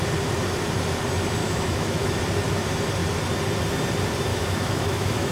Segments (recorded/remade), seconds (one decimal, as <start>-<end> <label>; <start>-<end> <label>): 0.0-1.4 recorded; 1.4-2.2 remade; 2.2-4.3 recorded; 4.3-5.3 remade

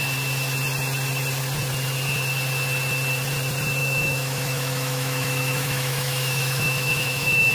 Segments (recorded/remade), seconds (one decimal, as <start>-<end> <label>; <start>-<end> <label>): 0.0-3.8 recorded; 3.8-7.5 remade

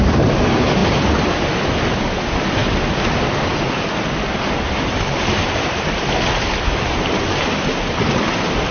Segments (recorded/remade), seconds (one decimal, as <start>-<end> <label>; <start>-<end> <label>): 0.0-8.7 recorded

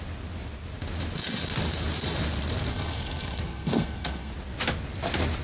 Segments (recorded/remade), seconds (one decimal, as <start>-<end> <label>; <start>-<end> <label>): 0.0-2.7 recorded; 2.7-4.3 remade; 4.3-5.4 recorded